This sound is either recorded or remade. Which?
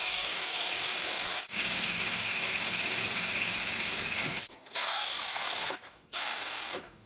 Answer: remade